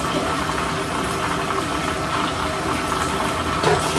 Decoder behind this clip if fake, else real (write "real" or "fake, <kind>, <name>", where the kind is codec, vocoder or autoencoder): real